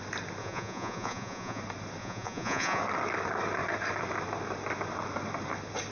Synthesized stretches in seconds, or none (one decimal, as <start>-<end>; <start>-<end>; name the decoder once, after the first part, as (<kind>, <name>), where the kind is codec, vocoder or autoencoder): 0.4-1.6 (vocoder, Vocos); 2.0-2.8